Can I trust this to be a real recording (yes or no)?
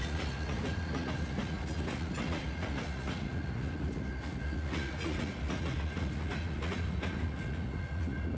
no